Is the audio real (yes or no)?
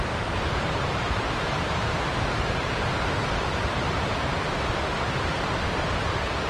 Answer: no